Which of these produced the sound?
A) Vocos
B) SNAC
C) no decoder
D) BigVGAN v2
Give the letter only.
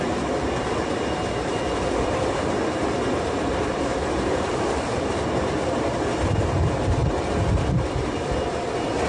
D